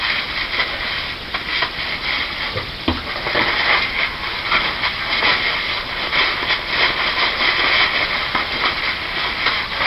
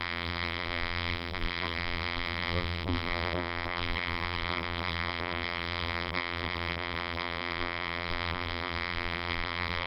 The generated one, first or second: second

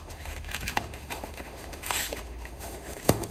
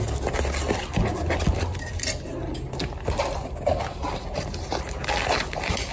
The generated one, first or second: first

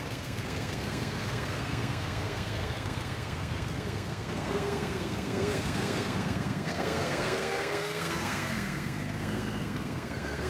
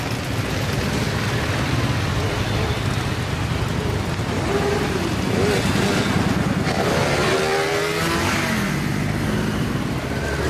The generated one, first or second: first